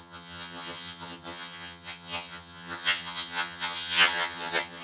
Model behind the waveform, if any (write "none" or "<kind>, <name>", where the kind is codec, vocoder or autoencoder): vocoder, HiFi-GAN